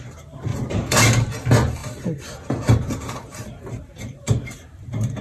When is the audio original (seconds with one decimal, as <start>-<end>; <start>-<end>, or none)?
0.0-0.5; 1.0-1.8